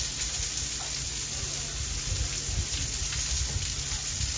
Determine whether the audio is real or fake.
real